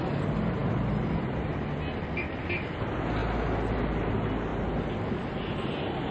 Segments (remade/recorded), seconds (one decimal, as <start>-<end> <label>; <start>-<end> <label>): 0.0-6.1 recorded